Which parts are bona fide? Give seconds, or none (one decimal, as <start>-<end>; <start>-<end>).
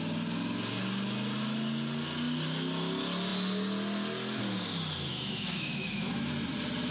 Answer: 0.0-5.1; 6.3-6.9